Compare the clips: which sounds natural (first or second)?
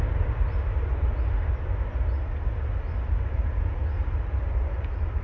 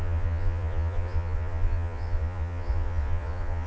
first